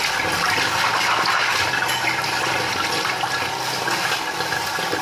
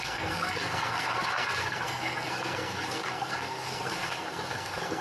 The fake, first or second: second